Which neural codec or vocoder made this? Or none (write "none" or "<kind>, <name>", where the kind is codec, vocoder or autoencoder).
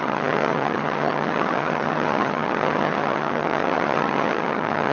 vocoder, HiFi-GAN